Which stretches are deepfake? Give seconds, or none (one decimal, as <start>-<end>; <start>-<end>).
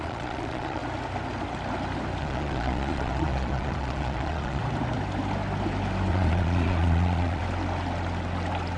0.0-0.8; 2.2-4.6; 6.1-7.4